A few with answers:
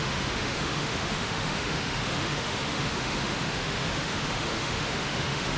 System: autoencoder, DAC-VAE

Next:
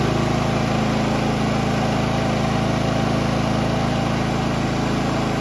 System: none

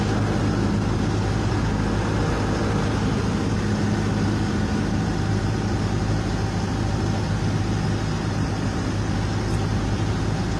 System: none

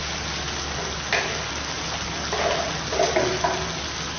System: none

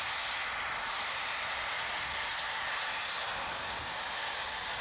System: none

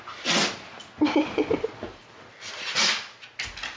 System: none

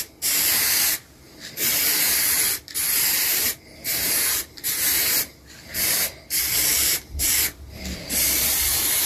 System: vocoder, BigVGAN v2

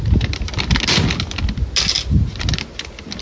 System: none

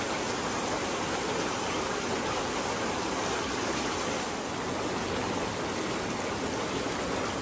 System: none